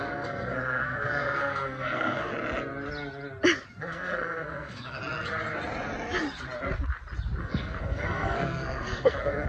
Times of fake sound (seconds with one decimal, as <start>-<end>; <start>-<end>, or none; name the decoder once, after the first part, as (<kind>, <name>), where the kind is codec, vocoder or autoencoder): 0.0-2.3 (codec, SNAC); 3.8-5.0; 7.4-9.5

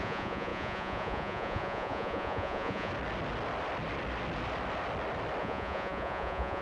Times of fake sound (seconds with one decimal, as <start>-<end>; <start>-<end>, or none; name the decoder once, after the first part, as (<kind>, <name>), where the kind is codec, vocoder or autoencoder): 0.0-2.9 (vocoder, Vocos); 5.4-6.6

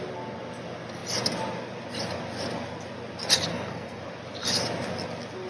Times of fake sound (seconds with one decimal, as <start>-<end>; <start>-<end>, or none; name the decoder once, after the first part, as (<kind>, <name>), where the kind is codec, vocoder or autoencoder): 3.5-4.0 (codec, SNAC)

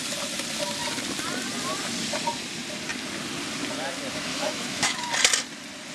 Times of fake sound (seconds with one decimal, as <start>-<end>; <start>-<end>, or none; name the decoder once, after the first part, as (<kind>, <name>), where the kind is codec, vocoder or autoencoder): 4.3-5.1 (autoencoder, DAC-VAE)

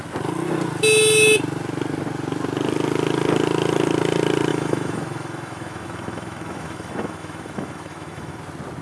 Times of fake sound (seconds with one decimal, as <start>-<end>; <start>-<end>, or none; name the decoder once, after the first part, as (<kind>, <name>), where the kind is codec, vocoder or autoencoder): 4.5-8.4 (autoencoder, DAC-VAE)

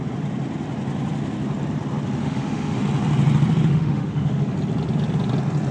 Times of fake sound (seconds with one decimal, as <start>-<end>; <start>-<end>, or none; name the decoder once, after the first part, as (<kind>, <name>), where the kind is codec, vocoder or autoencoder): 2.2-2.8 (autoencoder, DAC-VAE); 3.7-4.5

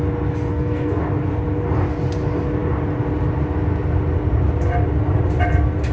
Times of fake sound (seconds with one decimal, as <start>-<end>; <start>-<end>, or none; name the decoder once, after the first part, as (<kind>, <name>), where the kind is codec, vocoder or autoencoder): 0.5-1.0 (codec, SNAC)